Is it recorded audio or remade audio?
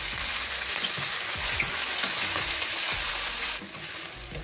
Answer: remade